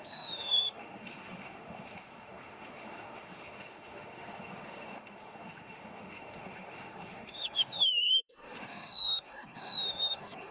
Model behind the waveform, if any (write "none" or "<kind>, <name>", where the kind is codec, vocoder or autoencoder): autoencoder, DAC-VAE